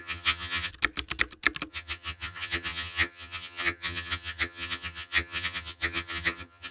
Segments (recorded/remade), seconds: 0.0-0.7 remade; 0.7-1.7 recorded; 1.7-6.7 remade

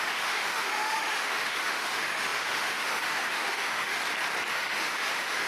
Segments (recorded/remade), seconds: 0.0-4.0 remade; 4.0-4.5 recorded; 4.5-5.5 remade

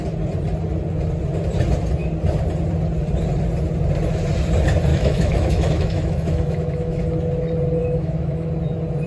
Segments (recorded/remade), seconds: 0.0-4.9 recorded; 4.9-7.0 remade; 7.0-7.8 recorded; 7.8-8.5 remade; 8.5-9.1 recorded

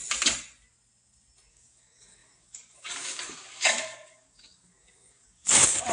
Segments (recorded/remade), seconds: 0.0-1.5 recorded; 1.5-5.9 remade